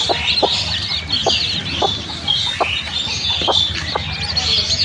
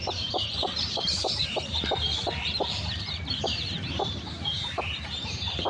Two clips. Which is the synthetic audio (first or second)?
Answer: second